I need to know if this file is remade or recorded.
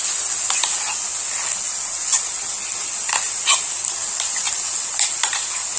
recorded